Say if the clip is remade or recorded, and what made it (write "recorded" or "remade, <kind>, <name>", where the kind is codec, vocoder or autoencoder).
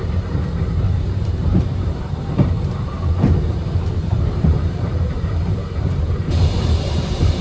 remade, vocoder, BigVGAN v2